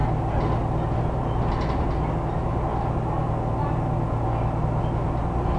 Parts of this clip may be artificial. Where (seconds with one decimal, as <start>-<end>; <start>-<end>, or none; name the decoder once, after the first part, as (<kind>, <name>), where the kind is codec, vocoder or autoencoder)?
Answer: none